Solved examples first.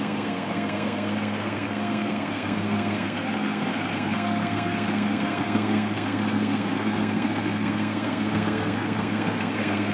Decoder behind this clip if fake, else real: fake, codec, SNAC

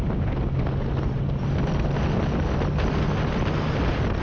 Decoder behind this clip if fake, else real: real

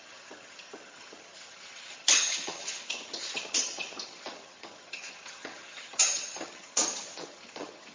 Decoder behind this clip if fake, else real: fake, vocoder, HiFi-GAN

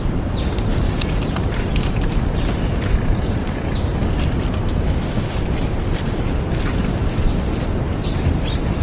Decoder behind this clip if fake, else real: real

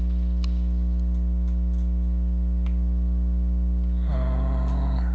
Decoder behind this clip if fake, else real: real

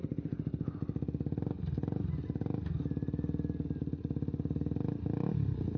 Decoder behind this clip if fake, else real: real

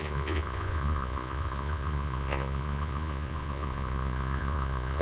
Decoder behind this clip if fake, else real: fake, vocoder, Vocos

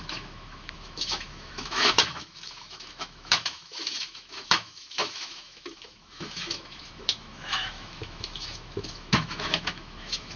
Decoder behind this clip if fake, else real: fake, autoencoder, DAC-VAE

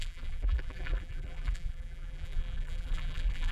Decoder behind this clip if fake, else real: fake, vocoder, BigVGAN v2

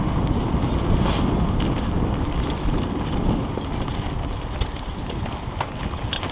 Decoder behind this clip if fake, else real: real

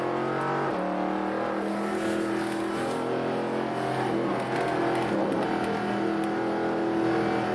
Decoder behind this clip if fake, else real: real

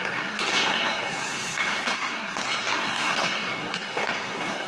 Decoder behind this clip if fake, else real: fake, codec, SNAC